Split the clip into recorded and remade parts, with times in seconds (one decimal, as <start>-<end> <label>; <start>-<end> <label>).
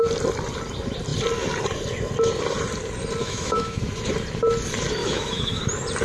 0.0-3.2 recorded; 3.2-3.8 remade; 3.8-5.0 recorded; 5.0-5.6 remade; 5.6-6.0 recorded